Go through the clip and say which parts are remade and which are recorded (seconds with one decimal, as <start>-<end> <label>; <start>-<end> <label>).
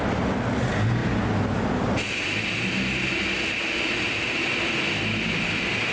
0.0-5.9 recorded